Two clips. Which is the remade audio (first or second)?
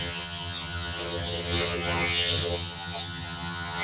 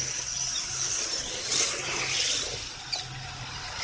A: first